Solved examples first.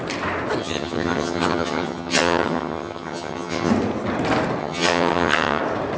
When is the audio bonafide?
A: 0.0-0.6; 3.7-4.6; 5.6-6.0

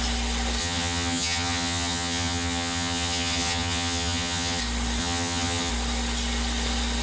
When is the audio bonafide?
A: 0.0-0.6; 4.6-5.0; 5.7-7.0

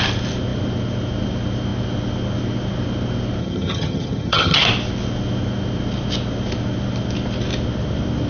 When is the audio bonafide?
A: 0.0-3.4; 4.6-8.3